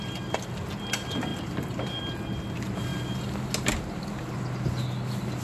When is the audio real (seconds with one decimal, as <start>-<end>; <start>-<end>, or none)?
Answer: 0.0-5.4